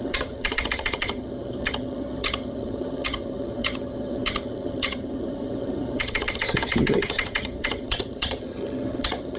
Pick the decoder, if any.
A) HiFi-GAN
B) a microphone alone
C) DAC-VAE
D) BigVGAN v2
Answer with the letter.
A